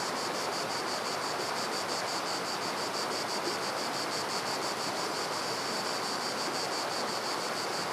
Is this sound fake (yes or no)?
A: no